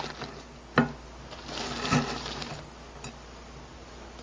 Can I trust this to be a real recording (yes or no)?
yes